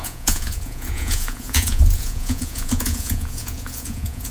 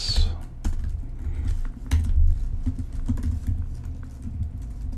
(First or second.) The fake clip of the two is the first